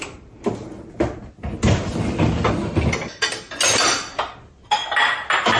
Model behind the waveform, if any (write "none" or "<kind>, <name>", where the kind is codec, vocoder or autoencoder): none